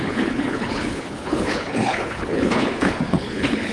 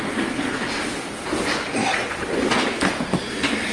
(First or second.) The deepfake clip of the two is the first